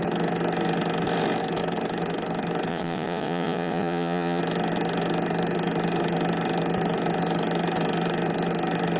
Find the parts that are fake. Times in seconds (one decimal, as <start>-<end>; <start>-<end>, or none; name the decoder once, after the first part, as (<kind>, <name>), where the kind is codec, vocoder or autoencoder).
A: 2.7-4.4 (vocoder, Vocos)